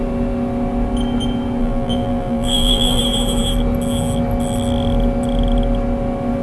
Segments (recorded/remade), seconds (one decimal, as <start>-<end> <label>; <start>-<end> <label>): 0.0-1.6 recorded; 1.6-3.0 remade; 3.0-6.4 recorded